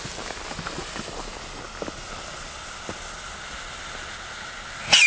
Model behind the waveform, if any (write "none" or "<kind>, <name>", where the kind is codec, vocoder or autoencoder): none